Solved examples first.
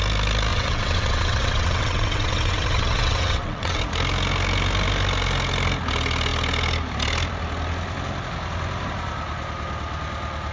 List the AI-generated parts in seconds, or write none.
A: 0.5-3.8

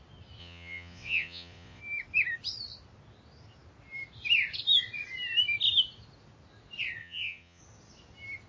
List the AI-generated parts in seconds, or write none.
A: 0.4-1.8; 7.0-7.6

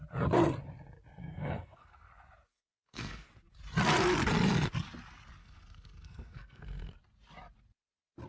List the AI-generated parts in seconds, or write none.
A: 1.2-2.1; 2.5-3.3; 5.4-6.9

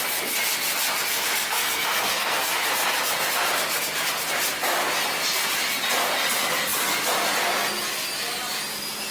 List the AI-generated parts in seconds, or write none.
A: 1.1-2.4